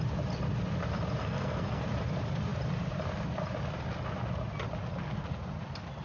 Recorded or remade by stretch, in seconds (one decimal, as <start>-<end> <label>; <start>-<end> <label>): 0.0-1.2 recorded; 1.2-1.8 remade; 1.8-6.0 recorded